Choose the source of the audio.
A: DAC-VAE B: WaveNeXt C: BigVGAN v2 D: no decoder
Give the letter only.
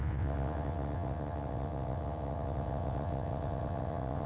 B